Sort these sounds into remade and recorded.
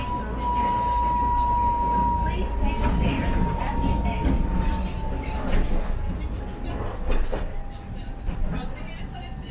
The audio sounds recorded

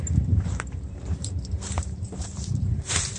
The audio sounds remade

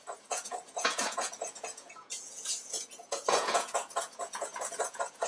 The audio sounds remade